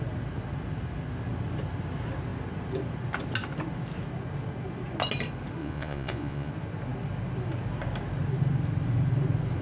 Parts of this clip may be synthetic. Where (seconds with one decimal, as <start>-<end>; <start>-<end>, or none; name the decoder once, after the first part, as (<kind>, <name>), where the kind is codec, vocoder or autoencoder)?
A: 5.6-6.5 (vocoder, Vocos)